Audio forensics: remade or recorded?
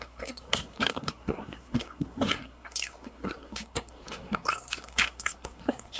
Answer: remade